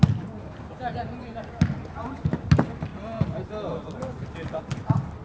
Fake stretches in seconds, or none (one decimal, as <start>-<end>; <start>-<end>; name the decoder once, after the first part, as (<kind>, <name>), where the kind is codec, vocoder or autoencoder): none